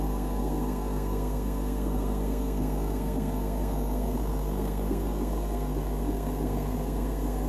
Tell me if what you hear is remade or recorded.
remade